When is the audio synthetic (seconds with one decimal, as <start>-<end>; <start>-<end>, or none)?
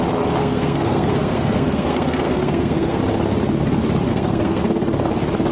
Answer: 0.4-3.0; 4.1-4.6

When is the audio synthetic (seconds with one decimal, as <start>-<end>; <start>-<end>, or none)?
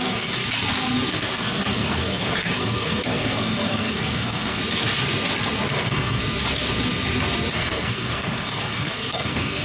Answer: 0.0-0.4; 1.1-4.6; 5.7-6.2; 7.5-9.6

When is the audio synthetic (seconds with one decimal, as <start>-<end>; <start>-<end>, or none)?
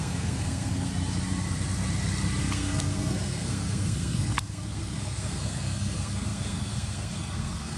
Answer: 0.0-0.9; 2.4-7.8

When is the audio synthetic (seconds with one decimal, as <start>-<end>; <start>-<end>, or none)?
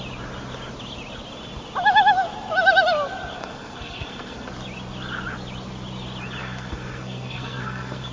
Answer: 3.4-4.5; 6.4-8.1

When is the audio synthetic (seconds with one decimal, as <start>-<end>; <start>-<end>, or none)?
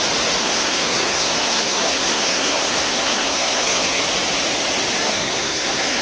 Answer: 0.4-4.0; 5.0-6.0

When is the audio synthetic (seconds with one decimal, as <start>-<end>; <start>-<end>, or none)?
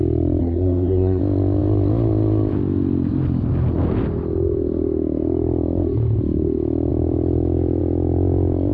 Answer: 0.4-1.2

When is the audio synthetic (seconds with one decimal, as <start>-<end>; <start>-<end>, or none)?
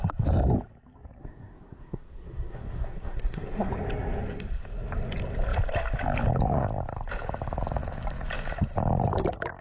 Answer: 1.2-3.7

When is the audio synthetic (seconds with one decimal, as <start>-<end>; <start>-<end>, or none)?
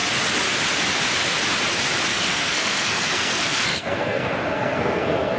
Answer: 2.1-5.4